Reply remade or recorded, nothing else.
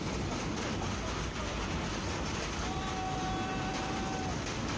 recorded